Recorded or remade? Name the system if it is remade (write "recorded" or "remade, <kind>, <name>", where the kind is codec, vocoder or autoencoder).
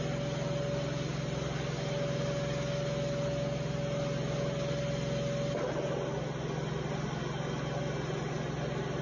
recorded